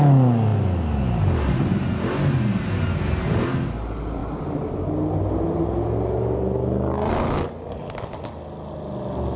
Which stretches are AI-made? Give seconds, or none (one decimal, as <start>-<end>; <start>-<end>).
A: none